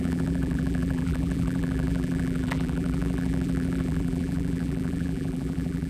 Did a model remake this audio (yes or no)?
yes